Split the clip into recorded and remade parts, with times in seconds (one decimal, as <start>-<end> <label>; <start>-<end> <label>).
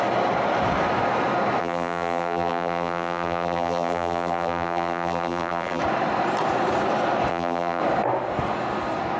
0.0-1.6 recorded; 1.6-5.8 remade; 5.8-7.3 recorded; 7.3-7.8 remade; 7.8-9.2 recorded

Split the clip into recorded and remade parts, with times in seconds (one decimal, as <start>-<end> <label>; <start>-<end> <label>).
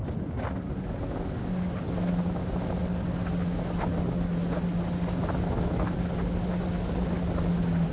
0.0-7.9 recorded